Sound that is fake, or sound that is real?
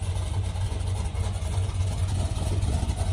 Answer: fake